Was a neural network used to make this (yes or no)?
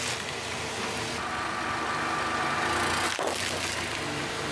no